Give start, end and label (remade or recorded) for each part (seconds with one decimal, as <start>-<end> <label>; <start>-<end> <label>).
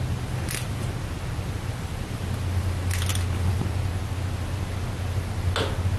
0.0-6.0 recorded